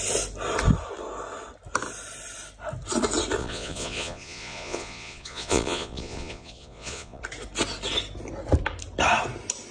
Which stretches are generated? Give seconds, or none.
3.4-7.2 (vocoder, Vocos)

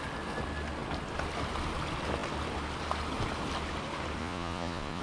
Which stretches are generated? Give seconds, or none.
4.2-5.0 (vocoder, Vocos)